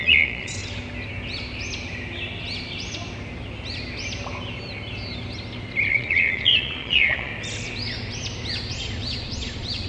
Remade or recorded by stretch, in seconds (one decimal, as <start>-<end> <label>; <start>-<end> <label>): 0.0-0.6 remade; 0.6-5.9 recorded; 5.9-7.3 remade; 7.3-8.7 recorded; 8.7-9.9 remade